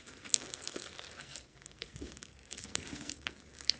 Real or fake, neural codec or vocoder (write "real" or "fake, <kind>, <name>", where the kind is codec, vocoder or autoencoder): fake, codec, SNAC